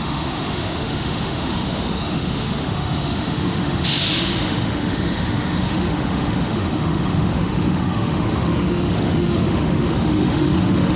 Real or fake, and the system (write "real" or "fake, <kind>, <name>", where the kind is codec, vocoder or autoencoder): fake, autoencoder, DAC-VAE